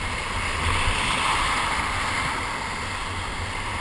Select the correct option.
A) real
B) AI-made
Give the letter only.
A